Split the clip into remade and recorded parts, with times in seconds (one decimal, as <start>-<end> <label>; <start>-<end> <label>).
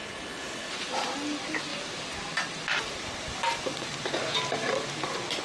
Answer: 0.0-0.7 remade; 0.7-5.4 recorded